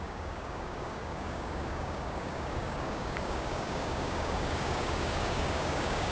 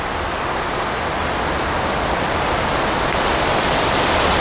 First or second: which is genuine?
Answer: second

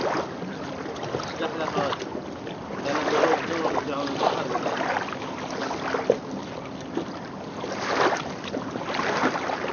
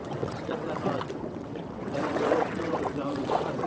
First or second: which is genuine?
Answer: first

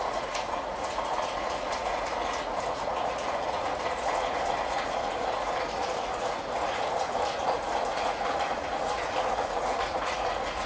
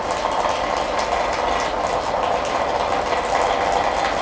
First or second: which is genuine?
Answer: second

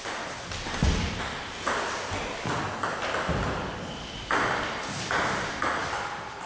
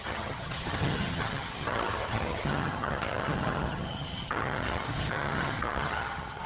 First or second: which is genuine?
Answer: first